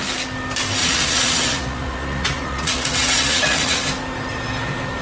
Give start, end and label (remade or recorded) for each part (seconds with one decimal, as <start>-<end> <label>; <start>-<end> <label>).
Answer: 0.0-0.8 recorded; 0.8-3.8 remade; 3.8-5.0 recorded